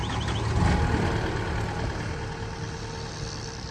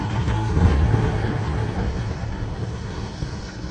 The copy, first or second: second